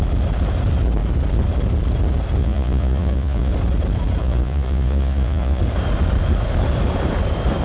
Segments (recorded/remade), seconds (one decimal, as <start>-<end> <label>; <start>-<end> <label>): 0.0-2.4 recorded; 2.4-3.5 remade; 3.5-4.2 recorded; 4.2-5.6 remade; 5.6-7.6 recorded